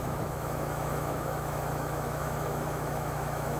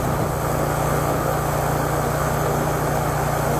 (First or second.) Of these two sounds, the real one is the second